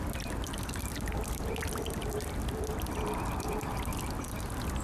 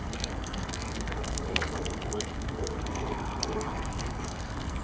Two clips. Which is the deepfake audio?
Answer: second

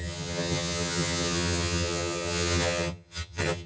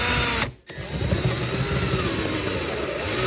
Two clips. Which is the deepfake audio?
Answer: first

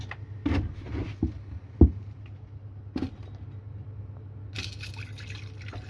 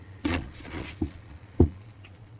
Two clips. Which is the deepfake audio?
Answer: second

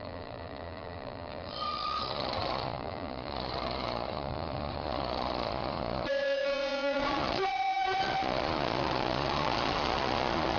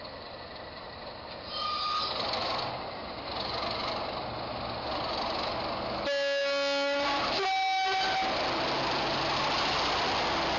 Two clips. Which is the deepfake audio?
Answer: first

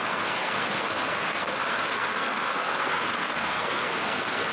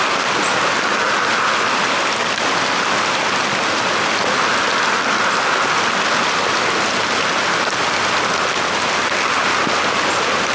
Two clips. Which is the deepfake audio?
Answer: first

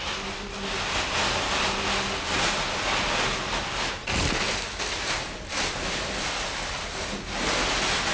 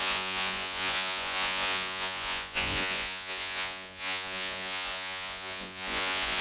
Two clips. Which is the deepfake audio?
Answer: second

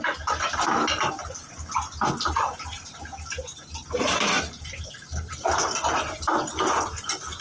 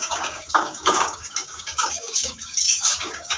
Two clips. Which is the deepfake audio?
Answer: second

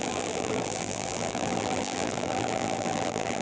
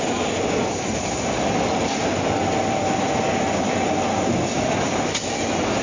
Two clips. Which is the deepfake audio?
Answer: first